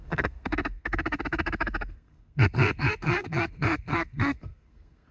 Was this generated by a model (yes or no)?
yes